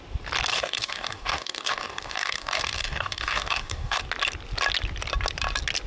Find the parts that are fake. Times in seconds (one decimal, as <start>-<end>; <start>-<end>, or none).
0.5-4.0

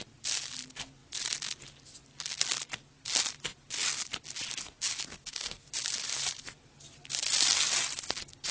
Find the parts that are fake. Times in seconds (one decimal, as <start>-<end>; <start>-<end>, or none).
5.1-5.7

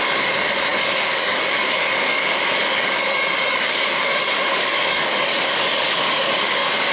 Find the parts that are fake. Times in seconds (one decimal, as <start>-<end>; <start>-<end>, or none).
0.0-6.9

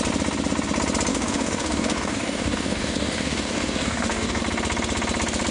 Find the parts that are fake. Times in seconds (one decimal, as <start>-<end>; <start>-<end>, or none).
1.1-4.4

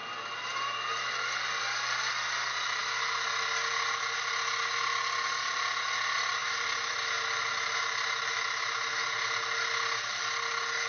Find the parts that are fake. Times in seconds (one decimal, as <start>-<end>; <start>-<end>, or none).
none

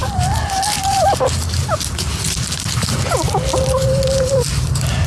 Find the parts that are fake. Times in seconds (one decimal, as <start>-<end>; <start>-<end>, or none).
none